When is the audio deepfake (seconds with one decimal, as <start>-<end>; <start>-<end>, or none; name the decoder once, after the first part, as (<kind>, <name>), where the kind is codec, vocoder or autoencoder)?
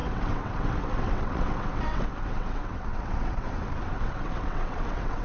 0.0-5.2 (vocoder, WaveNeXt)